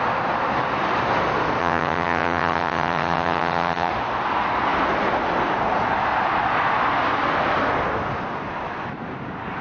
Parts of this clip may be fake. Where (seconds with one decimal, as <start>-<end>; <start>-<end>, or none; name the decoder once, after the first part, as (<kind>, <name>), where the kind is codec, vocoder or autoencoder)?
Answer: 1.6-3.9 (vocoder, HiFi-GAN)